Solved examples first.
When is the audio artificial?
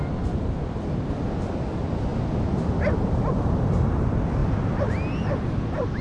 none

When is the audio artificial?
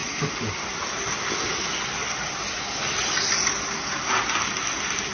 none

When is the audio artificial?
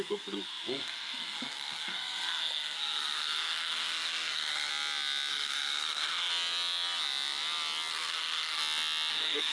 0.0-4.7; 5.3-6.3; 7.9-8.6; 9.1-9.5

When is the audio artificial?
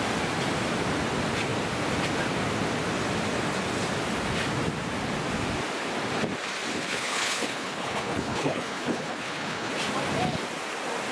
6.8-9.7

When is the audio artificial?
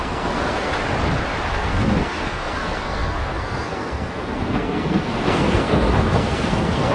0.0-0.7; 1.5-6.9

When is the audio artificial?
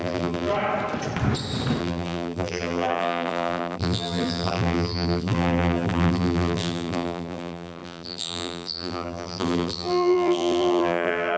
0.0-0.5; 1.8-11.4